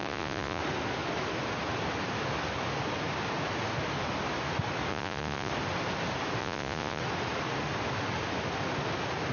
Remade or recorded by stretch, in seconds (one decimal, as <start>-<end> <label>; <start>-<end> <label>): 0.0-0.6 remade; 0.6-4.9 recorded; 4.9-5.5 remade; 5.5-6.4 recorded; 6.4-7.0 remade; 7.0-9.3 recorded